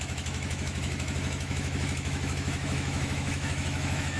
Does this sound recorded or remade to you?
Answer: remade